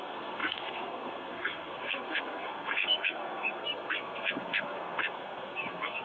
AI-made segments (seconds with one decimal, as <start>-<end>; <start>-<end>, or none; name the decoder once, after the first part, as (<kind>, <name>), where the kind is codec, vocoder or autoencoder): 0.0-6.0 (codec, SNAC)